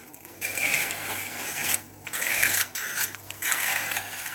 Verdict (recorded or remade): remade